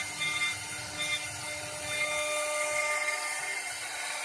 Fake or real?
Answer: real